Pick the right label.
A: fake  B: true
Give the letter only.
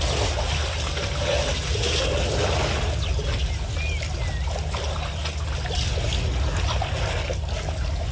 B